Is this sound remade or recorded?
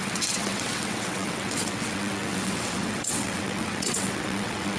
remade